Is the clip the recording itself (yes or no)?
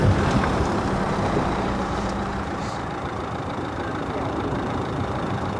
no